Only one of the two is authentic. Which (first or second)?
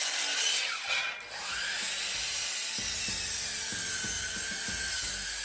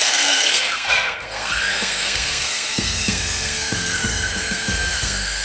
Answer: first